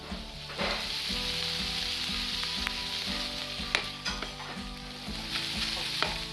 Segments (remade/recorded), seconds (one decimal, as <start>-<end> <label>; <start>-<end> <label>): 0.0-6.3 recorded